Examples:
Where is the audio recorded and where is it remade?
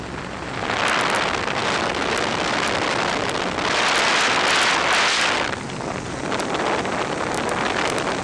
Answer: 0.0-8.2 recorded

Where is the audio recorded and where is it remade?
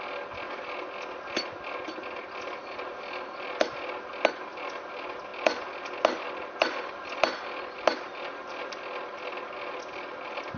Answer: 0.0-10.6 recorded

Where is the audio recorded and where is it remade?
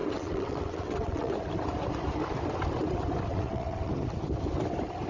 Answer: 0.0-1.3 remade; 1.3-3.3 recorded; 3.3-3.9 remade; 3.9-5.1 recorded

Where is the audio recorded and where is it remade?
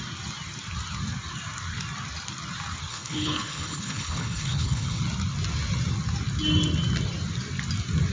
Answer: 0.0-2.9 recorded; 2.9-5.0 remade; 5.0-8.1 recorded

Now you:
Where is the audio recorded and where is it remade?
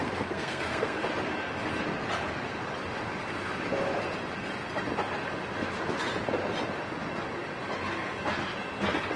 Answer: 0.0-1.0 remade; 1.0-9.2 recorded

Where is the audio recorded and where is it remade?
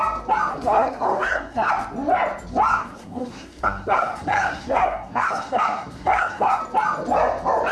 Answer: 0.0-0.5 recorded; 0.5-1.7 remade; 1.7-2.7 recorded; 2.7-6.6 remade; 6.6-7.7 recorded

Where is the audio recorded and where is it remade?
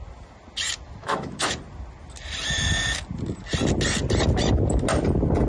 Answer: 0.0-1.0 recorded; 1.0-1.6 remade; 1.6-5.5 recorded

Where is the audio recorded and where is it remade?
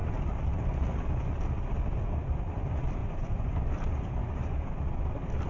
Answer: 0.0-3.0 recorded; 3.0-3.6 remade; 3.6-5.5 recorded